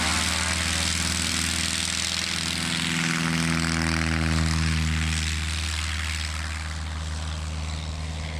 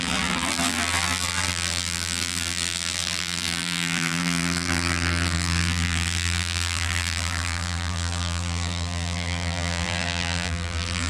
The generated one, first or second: second